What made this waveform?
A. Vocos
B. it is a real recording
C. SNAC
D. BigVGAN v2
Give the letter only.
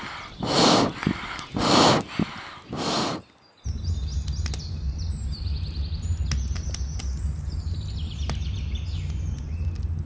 B